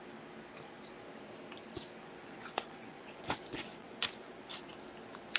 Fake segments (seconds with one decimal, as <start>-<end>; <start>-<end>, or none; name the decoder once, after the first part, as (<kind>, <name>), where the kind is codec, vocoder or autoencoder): 2.0-4.3 (vocoder, Vocos)